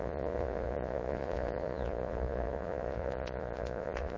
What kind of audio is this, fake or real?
fake